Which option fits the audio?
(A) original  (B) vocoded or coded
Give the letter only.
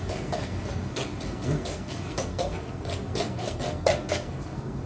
B